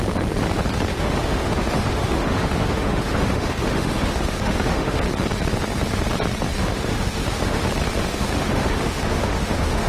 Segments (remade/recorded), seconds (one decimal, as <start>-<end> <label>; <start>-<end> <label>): 0.0-0.9 recorded; 0.9-5.0 remade; 5.0-6.6 recorded; 6.6-7.6 remade; 7.6-8.0 recorded; 8.0-9.9 remade